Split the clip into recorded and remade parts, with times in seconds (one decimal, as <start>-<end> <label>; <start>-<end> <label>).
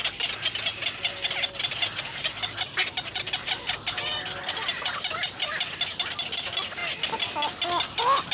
0.0-8.3 recorded